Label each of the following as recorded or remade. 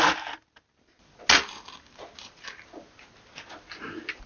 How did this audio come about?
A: recorded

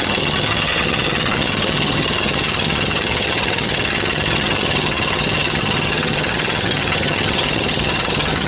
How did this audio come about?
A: remade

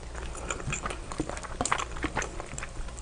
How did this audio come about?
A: recorded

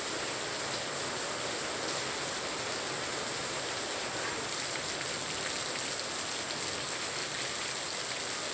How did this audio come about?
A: recorded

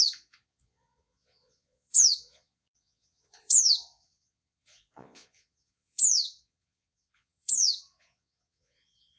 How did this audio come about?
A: remade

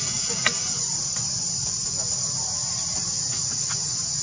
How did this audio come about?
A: recorded